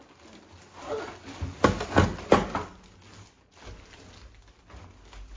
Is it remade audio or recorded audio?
recorded